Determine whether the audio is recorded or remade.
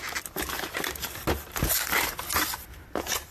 recorded